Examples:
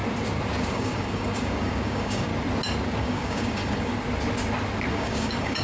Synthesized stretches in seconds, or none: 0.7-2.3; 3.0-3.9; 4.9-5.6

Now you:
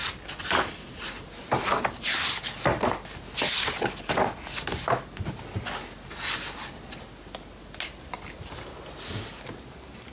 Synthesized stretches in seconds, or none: none

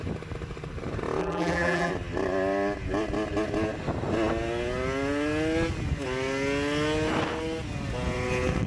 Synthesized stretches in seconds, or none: 1.2-1.9

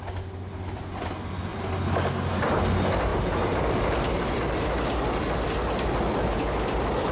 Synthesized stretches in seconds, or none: none

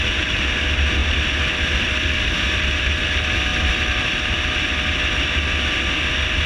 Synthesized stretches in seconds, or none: 1.0-2.9; 3.5-4.3

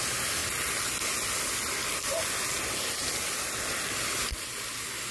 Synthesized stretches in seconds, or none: 0.4-0.9; 3.0-4.6